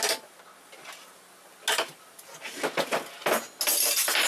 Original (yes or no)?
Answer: yes